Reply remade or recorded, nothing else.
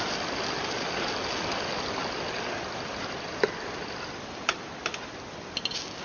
recorded